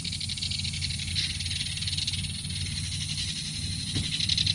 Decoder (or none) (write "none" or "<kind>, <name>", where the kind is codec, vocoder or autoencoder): none